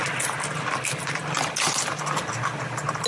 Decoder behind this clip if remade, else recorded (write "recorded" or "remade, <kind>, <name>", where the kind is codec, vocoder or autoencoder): recorded